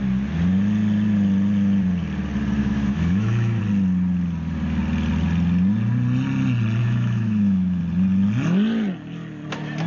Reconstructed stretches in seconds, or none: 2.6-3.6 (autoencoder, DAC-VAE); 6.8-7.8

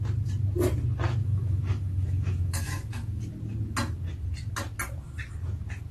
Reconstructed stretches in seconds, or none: 1.2-3.2 (autoencoder, DAC-VAE)

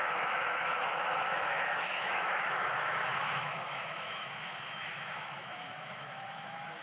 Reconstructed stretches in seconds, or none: 0.0-6.8 (autoencoder, DAC-VAE)

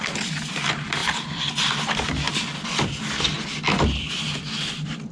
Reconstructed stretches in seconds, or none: none